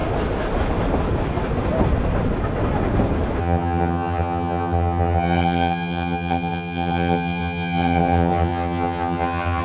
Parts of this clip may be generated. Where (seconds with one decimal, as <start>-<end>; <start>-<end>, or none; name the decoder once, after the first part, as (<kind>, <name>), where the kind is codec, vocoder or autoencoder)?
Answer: 3.4-9.6 (vocoder, HiFi-GAN)